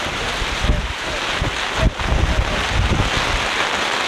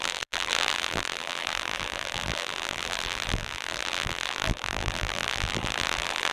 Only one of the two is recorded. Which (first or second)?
first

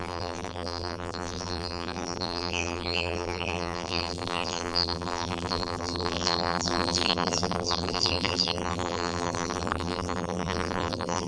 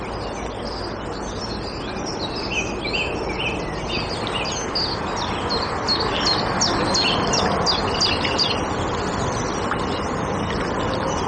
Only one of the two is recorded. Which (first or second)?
second